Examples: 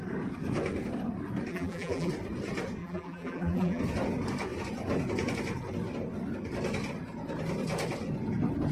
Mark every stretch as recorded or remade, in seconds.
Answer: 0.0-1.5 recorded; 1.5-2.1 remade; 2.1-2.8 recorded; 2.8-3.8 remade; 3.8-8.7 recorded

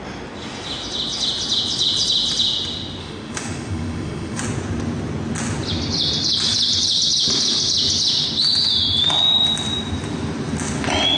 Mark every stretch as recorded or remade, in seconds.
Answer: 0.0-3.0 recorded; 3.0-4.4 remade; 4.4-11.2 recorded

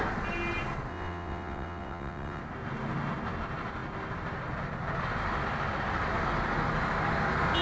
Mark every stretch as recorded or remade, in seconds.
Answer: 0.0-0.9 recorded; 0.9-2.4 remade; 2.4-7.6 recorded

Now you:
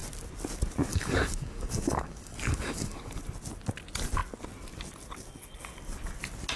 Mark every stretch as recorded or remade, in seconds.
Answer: 0.0-0.9 recorded; 0.9-3.2 remade; 3.2-6.6 recorded

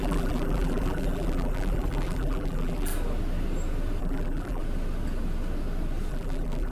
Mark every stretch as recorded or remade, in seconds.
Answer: 0.0-2.9 remade; 2.9-4.0 recorded; 4.0-4.6 remade; 4.6-6.1 recorded; 6.1-6.7 remade

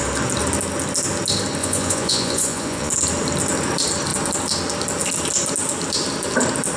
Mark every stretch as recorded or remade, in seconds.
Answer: 0.0-1.6 recorded; 1.6-2.9 remade; 2.9-6.8 recorded

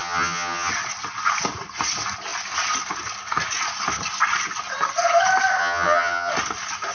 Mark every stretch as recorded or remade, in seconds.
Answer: 0.0-0.7 remade; 0.7-5.6 recorded; 5.6-6.3 remade; 6.3-6.9 recorded